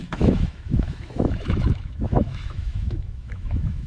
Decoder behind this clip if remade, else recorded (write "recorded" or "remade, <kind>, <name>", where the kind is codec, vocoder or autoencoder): remade, autoencoder, DAC-VAE